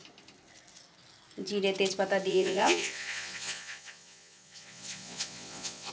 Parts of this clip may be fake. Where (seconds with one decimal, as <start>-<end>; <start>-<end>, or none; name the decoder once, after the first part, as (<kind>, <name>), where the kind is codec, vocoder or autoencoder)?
2.3-5.9 (vocoder, Vocos)